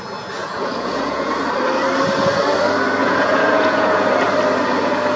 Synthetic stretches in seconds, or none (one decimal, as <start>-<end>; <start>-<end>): 0.4-1.3; 3.0-4.1